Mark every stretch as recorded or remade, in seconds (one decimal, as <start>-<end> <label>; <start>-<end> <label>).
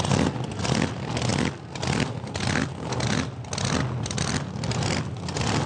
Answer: 0.0-5.7 recorded